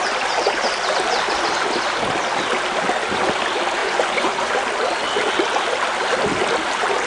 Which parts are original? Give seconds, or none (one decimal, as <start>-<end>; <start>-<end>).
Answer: 0.0-3.8; 4.5-7.1